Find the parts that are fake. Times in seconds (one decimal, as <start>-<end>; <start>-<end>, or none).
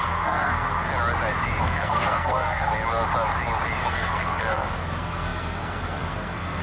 0.0-0.9; 1.6-2.7; 3.9-6.6